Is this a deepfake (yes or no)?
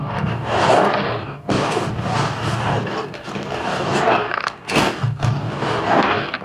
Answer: yes